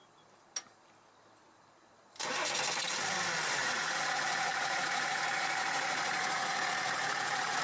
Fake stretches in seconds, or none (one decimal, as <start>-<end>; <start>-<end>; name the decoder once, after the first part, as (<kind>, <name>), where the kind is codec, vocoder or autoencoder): 3.6-7.6 (vocoder, Vocos)